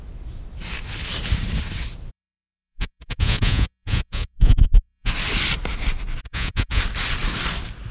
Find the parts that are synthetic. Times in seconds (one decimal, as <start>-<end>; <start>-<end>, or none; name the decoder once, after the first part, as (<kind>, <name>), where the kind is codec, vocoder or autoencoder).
2.1-5.1 (vocoder, Vocos); 6.2-6.8